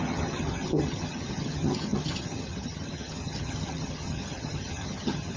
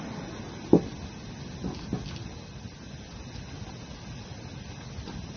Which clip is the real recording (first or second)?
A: second